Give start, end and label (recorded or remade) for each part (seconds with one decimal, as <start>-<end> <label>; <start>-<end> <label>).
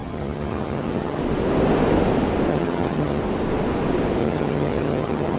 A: 0.0-1.2 remade; 1.2-2.5 recorded; 2.5-3.2 remade; 3.2-4.2 recorded; 4.2-5.4 remade